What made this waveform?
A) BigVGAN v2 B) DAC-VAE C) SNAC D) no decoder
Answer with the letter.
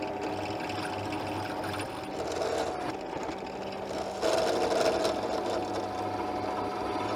D